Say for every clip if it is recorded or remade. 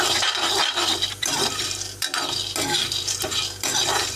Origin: remade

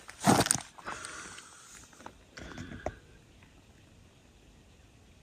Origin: recorded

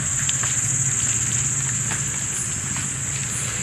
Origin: recorded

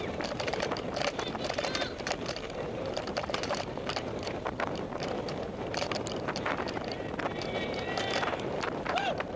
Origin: remade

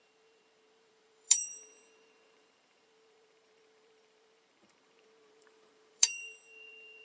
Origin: remade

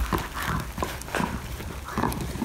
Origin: recorded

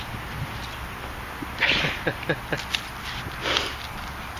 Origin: recorded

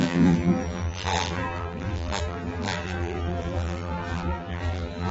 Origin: remade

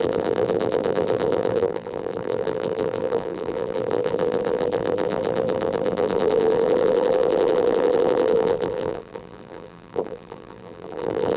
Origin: remade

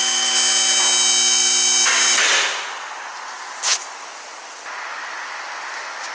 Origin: recorded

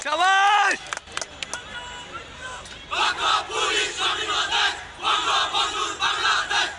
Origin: recorded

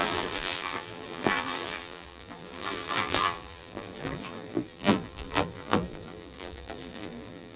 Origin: remade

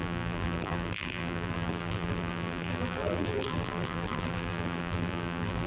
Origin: remade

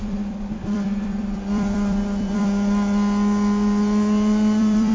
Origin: remade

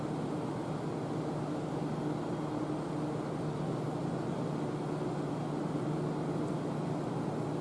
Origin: recorded